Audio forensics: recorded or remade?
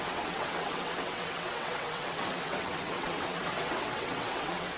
remade